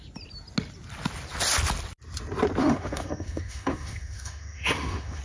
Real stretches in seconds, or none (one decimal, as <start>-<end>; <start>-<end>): 0.0-2.6